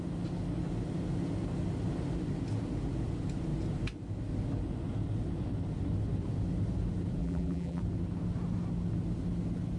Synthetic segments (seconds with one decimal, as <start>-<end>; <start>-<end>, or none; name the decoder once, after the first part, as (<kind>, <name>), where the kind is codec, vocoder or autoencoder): 7.2-7.8 (vocoder, BigVGAN v2)